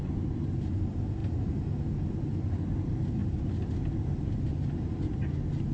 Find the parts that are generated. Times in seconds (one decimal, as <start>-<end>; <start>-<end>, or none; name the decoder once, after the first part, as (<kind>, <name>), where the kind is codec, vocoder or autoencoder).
none